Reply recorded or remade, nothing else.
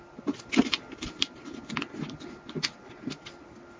recorded